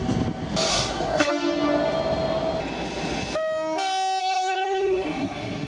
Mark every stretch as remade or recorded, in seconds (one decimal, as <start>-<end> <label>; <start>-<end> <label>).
0.0-0.7 recorded; 0.7-1.3 remade; 1.3-4.2 recorded; 4.2-5.7 remade